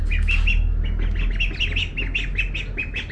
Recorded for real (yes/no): yes